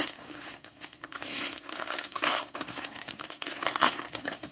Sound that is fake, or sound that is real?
fake